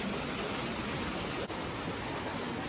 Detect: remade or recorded recorded